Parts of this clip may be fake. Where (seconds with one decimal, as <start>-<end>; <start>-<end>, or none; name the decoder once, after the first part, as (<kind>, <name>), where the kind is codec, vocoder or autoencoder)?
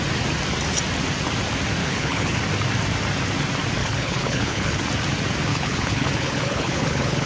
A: 1.8-2.4 (codec, HILCodec); 3.8-4.8; 5.5-7.3